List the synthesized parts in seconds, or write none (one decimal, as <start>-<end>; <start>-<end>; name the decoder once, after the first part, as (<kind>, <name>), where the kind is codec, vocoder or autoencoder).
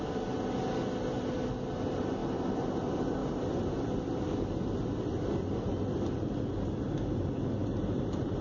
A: none